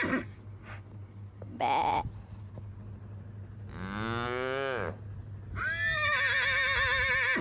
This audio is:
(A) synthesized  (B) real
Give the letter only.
B